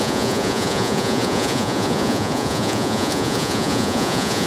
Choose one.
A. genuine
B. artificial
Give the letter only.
B